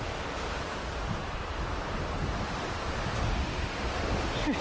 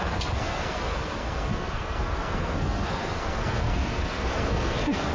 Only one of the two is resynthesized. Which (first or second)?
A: second